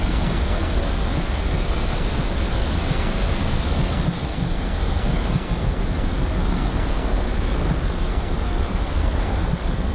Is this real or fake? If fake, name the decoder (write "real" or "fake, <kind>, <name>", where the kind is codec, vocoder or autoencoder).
fake, codec, SNAC